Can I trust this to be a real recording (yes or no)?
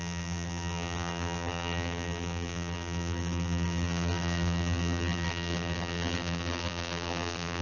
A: no